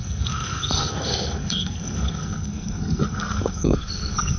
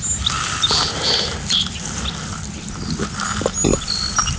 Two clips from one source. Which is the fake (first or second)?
first